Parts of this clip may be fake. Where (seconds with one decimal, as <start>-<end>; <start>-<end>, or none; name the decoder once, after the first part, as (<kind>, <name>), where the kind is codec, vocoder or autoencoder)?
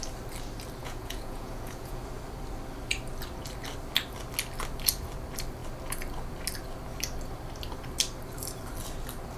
0.8-2.0 (vocoder, Vocos)